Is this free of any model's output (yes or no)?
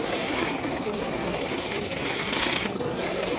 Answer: no